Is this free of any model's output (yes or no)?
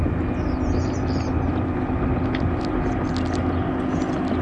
yes